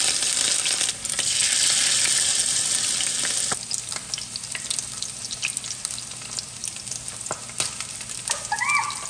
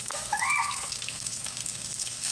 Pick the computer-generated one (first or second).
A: second